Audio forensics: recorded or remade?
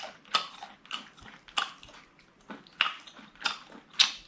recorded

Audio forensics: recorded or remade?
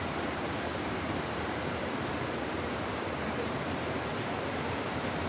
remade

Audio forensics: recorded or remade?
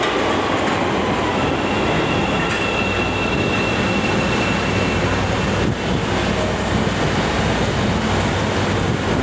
recorded